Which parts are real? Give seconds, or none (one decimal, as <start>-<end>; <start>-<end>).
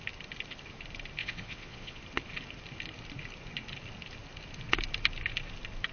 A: 0.0-1.2; 2.0-5.9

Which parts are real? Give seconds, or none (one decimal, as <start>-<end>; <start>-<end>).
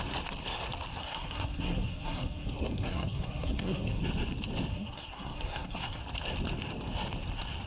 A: 0.0-1.0; 4.0-4.7; 6.0-7.7